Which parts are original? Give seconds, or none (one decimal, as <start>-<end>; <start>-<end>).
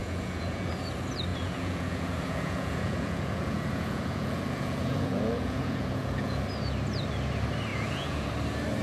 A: 0.7-1.3; 6.4-7.7; 8.3-8.8